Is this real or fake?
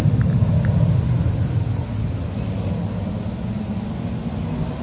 real